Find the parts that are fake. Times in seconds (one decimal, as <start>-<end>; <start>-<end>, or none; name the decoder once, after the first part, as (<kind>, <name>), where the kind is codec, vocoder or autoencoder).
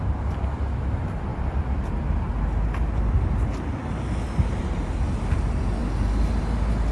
none